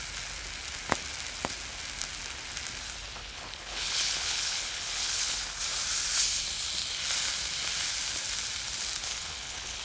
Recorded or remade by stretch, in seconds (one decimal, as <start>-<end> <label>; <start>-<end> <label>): 0.0-3.2 recorded; 3.2-5.4 remade; 5.4-9.0 recorded; 9.0-9.8 remade